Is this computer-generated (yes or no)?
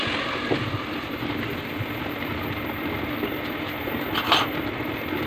no